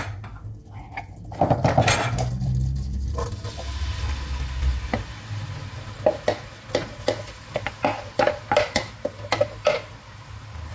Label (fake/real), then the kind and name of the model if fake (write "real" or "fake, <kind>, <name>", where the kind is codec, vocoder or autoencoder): real